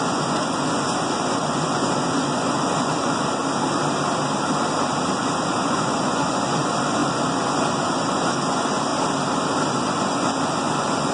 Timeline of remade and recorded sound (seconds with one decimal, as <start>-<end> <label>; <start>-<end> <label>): 0.0-3.4 remade; 3.4-5.2 recorded; 5.2-8.9 remade; 8.9-9.7 recorded; 9.7-11.1 remade